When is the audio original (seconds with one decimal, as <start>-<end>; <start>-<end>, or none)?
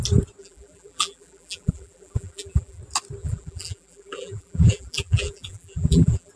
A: 0.0-0.4; 2.8-3.2